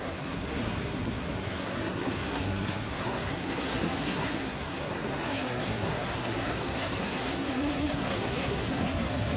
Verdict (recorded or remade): remade